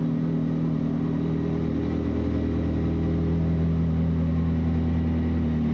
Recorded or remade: recorded